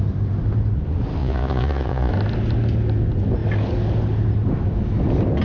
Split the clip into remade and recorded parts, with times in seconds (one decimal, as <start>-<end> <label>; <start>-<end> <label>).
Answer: 0.0-1.2 recorded; 1.2-2.1 remade; 2.1-5.4 recorded